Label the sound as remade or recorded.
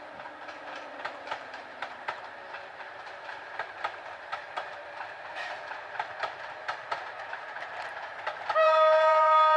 remade